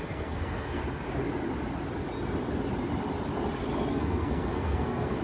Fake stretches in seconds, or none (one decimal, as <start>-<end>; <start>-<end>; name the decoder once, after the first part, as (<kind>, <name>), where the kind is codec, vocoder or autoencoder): 0.0-0.8 (codec, SNAC); 3.9-5.2